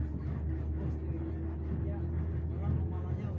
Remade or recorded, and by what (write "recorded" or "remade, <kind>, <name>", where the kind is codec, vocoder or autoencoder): recorded